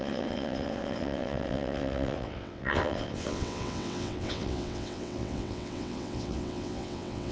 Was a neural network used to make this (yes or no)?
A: yes